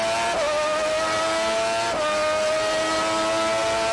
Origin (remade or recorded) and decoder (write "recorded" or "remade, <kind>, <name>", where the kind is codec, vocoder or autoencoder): recorded